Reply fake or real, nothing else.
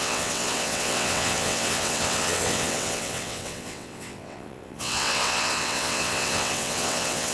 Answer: fake